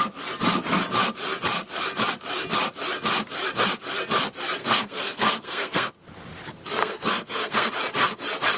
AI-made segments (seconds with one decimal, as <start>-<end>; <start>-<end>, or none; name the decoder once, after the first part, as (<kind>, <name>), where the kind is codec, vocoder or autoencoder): 4.6-5.9 (codec, SNAC); 6.8-7.7